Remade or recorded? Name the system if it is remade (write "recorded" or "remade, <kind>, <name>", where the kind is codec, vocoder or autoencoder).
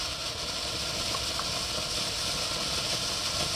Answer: recorded